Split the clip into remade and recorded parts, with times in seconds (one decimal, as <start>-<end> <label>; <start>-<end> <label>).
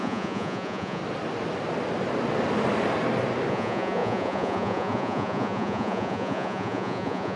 0.0-1.0 remade; 1.0-3.5 recorded; 3.5-7.4 remade